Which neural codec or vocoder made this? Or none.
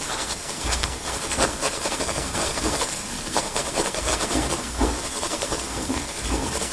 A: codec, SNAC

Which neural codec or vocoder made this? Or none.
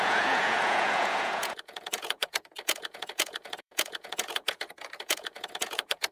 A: vocoder, Vocos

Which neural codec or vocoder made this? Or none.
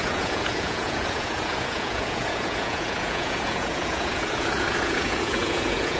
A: vocoder, Vocos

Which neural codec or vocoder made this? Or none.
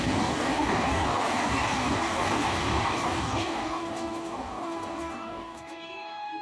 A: codec, DAC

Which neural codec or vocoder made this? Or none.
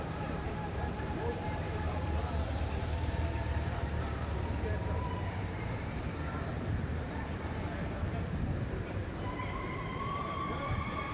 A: vocoder, BigVGAN v2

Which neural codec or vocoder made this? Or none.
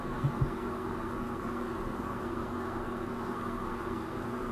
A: codec, SNAC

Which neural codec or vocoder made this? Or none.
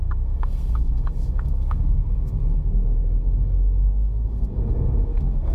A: codec, SNAC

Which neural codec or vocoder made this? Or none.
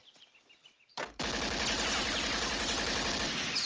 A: none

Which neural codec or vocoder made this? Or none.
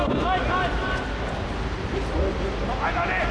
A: none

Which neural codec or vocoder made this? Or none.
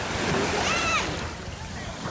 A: none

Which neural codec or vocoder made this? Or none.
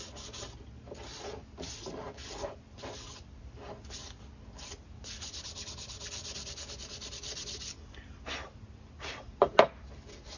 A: none